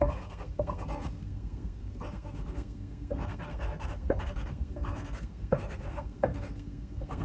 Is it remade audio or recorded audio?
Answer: remade